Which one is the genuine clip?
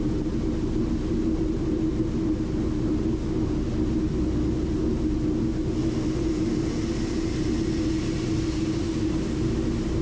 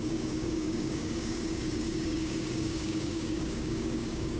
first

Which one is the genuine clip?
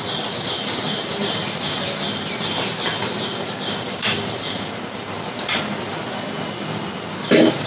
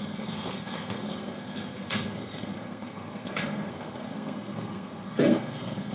first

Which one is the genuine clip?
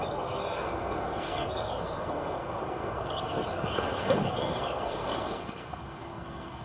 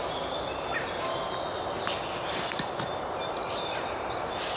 second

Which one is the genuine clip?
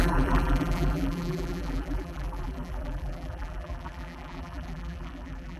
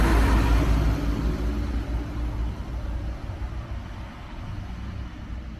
second